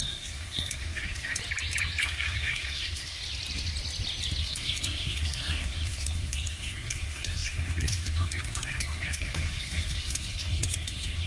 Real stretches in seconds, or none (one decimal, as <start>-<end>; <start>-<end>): 1.4-2.0; 3.2-4.4